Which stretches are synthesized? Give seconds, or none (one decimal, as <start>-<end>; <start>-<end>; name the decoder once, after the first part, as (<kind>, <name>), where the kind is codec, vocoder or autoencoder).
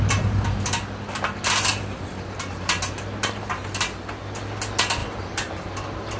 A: 5.0-5.5 (vocoder, BigVGAN v2)